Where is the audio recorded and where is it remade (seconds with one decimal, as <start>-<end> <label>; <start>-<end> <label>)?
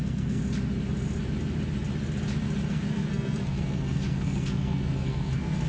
0.0-0.4 remade; 0.4-2.7 recorded; 2.7-5.7 remade